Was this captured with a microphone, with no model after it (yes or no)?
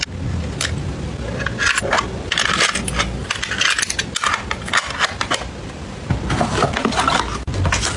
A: yes